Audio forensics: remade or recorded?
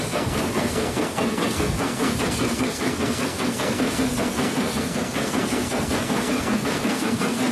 remade